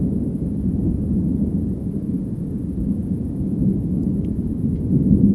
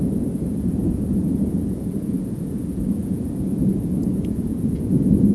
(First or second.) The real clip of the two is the first